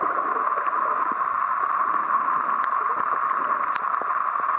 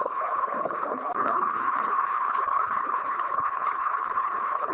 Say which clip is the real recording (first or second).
first